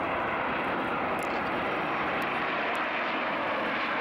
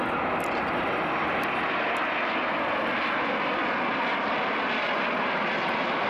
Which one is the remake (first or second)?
first